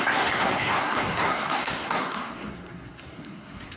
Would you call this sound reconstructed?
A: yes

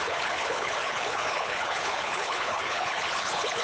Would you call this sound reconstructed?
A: yes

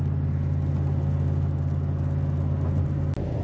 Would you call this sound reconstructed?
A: no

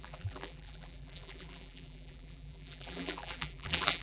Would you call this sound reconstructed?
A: yes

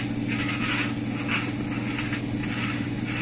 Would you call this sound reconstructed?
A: no